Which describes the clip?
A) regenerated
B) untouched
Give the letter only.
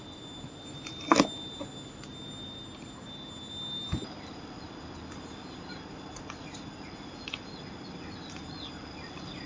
B